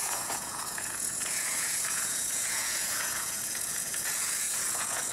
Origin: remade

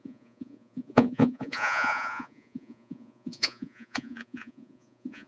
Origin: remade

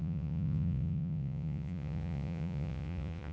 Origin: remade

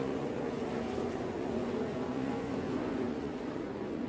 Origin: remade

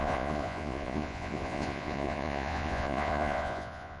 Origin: remade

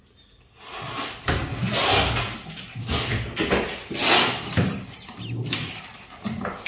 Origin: recorded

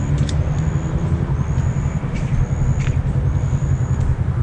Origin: recorded